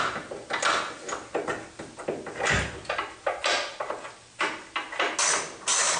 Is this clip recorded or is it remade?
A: recorded